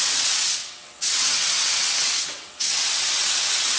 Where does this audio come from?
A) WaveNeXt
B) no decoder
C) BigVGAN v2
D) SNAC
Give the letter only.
A